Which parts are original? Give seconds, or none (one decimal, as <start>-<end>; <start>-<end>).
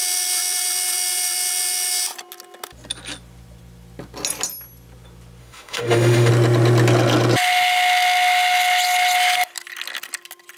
0.0-5.4; 6.3-10.6